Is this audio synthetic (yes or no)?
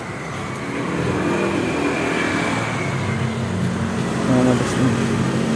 no